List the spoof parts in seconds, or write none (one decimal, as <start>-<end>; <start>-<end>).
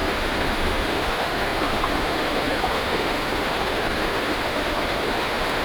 0.0-5.6